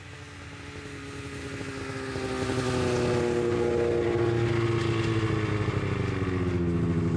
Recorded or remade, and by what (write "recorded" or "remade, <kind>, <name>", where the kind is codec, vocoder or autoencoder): recorded